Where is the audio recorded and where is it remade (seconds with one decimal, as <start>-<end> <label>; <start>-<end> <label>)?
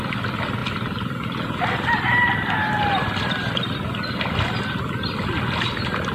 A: 0.0-6.1 recorded